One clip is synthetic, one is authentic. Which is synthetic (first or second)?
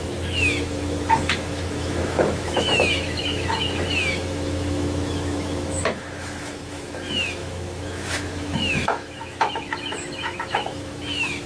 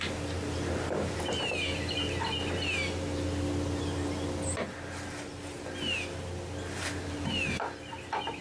first